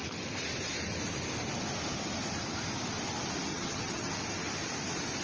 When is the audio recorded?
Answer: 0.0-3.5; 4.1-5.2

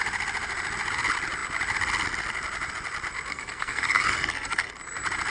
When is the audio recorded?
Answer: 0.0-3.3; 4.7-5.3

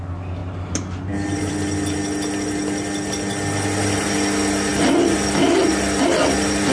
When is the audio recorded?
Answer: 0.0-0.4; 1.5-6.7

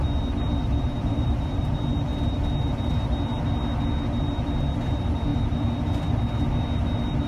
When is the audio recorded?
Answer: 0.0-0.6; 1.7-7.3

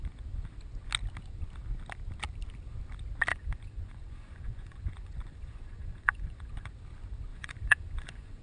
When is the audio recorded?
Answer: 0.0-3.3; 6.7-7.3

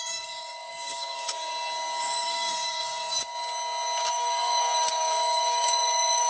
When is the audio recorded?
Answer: 1.5-2.0; 3.3-4.1